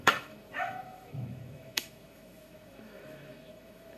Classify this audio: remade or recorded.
remade